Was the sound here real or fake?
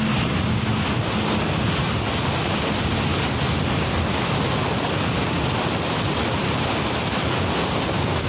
real